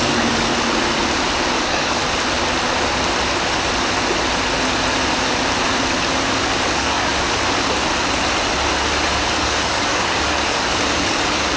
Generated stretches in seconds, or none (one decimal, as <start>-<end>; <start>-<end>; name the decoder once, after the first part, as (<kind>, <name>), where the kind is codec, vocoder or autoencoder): 0.0-0.5 (codec, DAC); 1.5-2.0; 6.4-7.1; 9.4-11.6